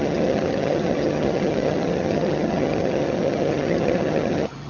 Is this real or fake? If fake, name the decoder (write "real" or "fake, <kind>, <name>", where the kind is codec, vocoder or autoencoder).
fake, vocoder, HiFi-GAN